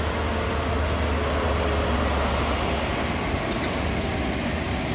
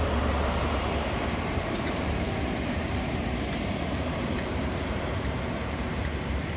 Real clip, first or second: first